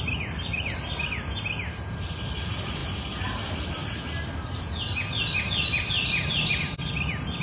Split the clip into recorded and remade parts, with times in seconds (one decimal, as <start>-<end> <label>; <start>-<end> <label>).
0.0-7.4 recorded